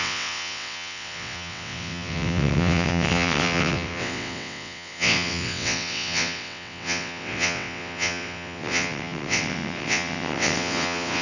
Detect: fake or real fake